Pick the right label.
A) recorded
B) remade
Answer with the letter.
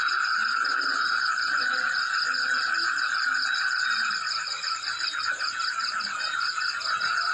A